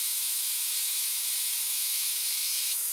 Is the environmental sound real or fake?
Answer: fake